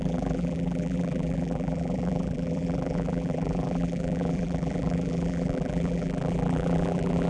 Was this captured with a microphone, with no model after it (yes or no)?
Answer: no